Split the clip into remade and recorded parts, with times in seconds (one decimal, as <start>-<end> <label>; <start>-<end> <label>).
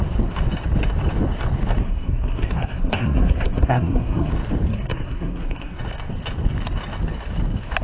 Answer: 0.0-1.8 recorded; 1.8-4.3 remade; 4.3-4.7 recorded; 4.7-5.8 remade; 5.8-7.8 recorded